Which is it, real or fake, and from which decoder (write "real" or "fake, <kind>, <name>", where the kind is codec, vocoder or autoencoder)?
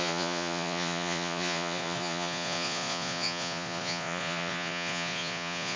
fake, vocoder, Vocos